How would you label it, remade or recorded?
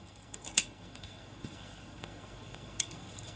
remade